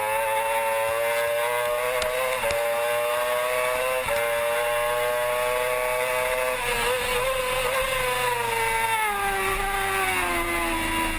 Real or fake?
real